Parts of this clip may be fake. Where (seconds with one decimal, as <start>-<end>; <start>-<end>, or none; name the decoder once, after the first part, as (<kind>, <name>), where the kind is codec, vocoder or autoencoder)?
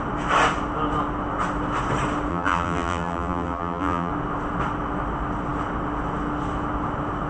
2.3-4.1 (vocoder, BigVGAN v2)